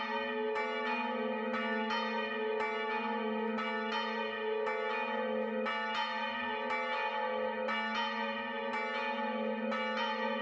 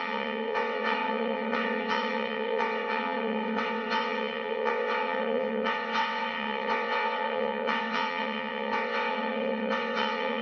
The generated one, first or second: second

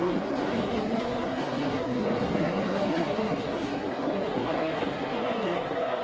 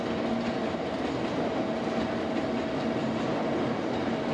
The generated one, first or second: first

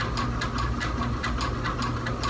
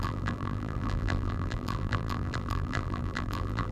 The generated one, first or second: second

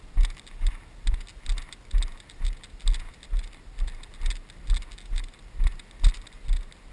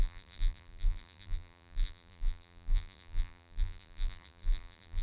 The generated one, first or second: second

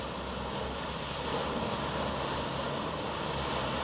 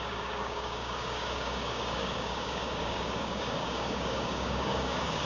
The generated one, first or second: second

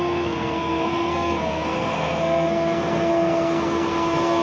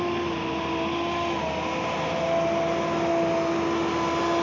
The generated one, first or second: first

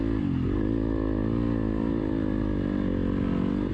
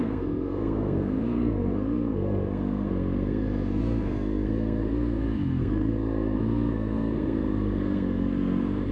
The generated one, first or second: second